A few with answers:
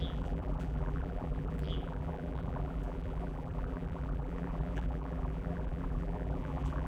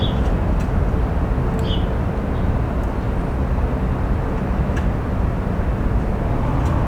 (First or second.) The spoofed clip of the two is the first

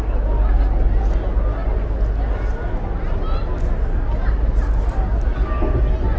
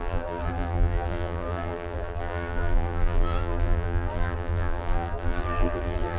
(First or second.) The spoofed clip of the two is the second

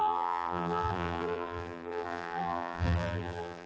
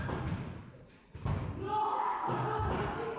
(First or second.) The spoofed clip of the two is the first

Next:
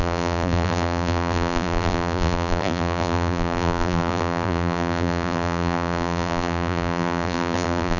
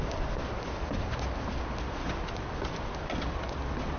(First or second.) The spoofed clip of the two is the first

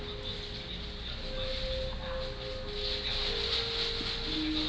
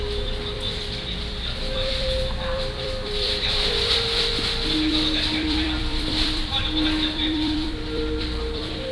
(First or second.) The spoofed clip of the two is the second